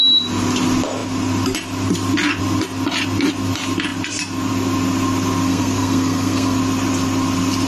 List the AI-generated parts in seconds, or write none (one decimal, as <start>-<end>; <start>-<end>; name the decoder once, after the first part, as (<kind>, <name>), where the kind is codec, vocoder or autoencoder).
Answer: 5.5-6.6 (codec, SNAC)